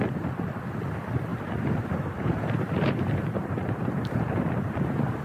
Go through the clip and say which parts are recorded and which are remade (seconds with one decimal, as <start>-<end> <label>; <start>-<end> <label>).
0.0-1.3 recorded; 1.3-4.4 remade; 4.4-5.2 recorded